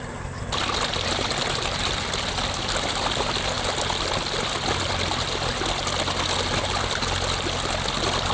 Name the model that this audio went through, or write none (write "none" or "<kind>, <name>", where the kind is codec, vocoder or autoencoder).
none